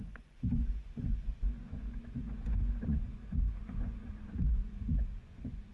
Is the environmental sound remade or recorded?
remade